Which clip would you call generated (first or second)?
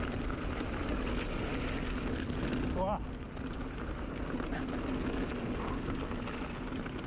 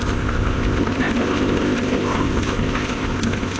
second